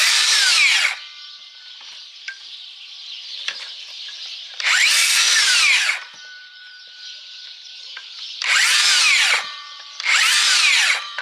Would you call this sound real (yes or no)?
no